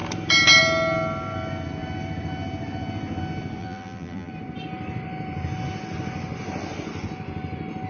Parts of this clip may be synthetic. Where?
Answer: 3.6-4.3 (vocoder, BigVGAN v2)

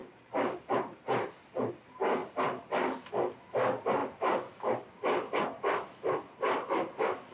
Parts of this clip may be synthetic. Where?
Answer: 0.0-1.7 (vocoder, BigVGAN v2); 2.2-3.1

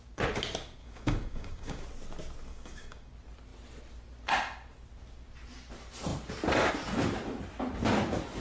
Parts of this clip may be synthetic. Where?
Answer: 0.8-1.8 (codec, DAC); 2.5-3.1

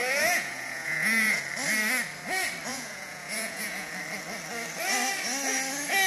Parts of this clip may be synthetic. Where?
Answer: 0.0-1.4 (vocoder, Vocos); 2.7-3.9

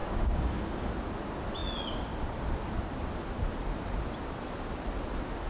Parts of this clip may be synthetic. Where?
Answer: 0.0-0.9 (codec, DAC)